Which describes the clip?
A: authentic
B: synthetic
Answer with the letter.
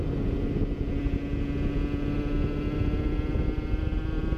A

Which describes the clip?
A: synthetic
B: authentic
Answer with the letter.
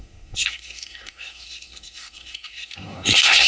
A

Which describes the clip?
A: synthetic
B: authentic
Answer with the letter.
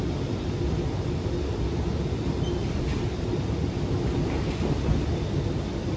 B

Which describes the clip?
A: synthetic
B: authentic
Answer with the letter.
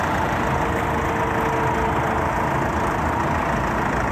B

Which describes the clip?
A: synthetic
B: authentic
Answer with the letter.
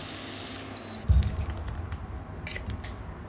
B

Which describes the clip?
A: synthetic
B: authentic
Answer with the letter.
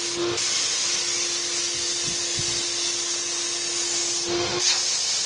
B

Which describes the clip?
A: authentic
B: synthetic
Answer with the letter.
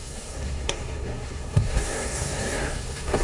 B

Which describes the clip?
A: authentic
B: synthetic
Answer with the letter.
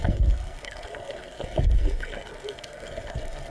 B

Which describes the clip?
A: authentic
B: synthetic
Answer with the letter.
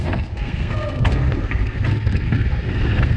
B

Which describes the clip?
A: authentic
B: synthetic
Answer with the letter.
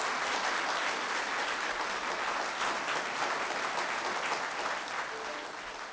A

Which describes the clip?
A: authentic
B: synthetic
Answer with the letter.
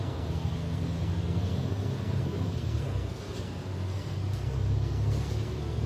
B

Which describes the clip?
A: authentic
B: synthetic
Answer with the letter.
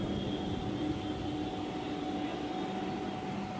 A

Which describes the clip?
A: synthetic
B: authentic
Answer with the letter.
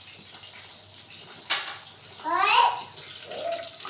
B